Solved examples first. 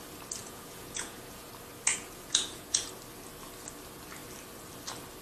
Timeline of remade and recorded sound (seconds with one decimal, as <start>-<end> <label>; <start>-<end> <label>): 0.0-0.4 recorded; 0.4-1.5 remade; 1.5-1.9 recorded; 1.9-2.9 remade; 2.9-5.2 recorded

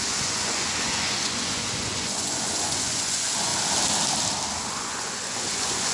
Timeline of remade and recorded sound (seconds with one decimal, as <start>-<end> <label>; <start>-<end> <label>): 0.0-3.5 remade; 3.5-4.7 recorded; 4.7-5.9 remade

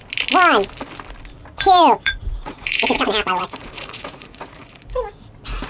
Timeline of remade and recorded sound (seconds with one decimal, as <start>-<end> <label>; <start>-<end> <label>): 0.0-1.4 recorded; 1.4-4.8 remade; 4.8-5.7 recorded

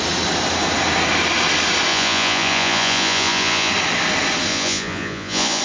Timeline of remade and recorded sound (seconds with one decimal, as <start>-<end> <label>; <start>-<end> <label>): 0.0-1.9 recorded; 1.9-3.7 remade; 3.7-4.5 recorded; 4.5-5.6 remade